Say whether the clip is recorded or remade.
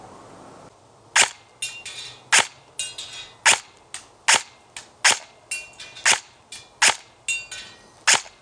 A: recorded